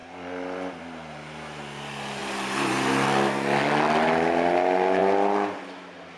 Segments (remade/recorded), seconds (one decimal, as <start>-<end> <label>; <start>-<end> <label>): 0.0-6.2 recorded

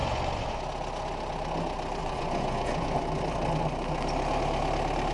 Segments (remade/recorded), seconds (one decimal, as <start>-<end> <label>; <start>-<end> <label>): 0.0-0.6 remade; 0.6-2.0 recorded; 2.0-3.2 remade; 3.2-5.1 recorded

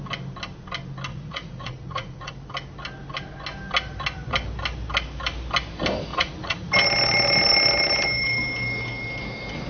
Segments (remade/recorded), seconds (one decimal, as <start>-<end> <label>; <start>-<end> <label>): 0.0-1.1 recorded; 1.1-2.3 remade; 2.3-6.1 recorded; 6.1-6.7 remade; 6.7-9.7 recorded

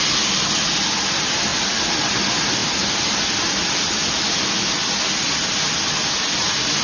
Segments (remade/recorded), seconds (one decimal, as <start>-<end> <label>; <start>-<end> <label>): 0.0-6.8 recorded

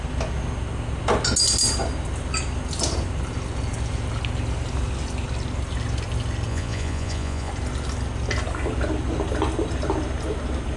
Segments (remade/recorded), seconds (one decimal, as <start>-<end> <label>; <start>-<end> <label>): 0.0-6.5 recorded; 6.5-7.5 remade; 7.5-10.8 recorded

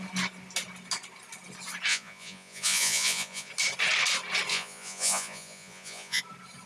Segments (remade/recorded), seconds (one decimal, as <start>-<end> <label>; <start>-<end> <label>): 0.0-1.9 recorded; 1.9-3.5 remade; 3.5-4.5 recorded; 4.5-6.2 remade; 6.2-6.7 recorded

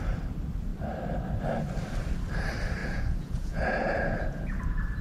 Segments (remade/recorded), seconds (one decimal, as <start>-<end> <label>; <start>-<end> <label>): 0.0-2.8 recorded; 2.8-4.6 remade; 4.6-5.0 recorded

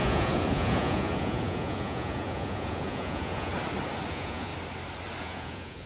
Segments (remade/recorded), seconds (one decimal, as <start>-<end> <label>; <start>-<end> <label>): 0.0-3.5 remade; 3.5-4.1 recorded; 4.1-4.5 remade; 4.5-5.2 recorded; 5.2-5.9 remade